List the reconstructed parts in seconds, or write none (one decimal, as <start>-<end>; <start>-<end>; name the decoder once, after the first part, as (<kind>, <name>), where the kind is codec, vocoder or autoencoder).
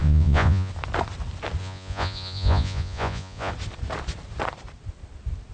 0.0-0.7 (vocoder, Vocos); 1.6-3.5